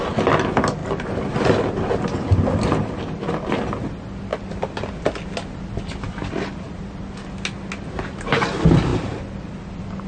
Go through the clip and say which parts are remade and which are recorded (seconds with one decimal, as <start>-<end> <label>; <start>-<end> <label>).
0.0-10.1 recorded